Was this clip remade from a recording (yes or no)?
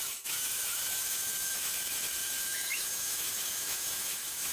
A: yes